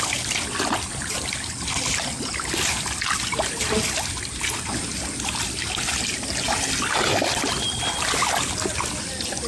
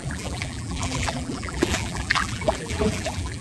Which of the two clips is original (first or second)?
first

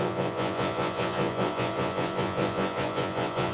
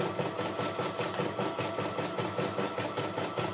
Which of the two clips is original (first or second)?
second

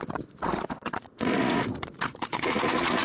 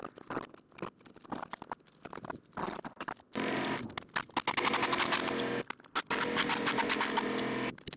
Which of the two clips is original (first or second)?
second